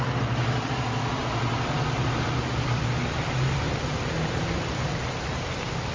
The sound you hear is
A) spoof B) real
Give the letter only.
B